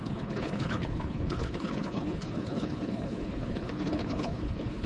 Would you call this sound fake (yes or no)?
yes